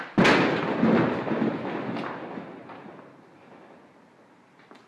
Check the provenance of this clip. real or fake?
real